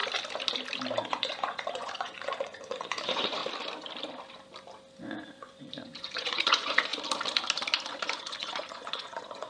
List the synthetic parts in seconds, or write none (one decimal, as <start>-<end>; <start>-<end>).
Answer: 1.1-3.4; 5.0-6.9; 7.9-9.5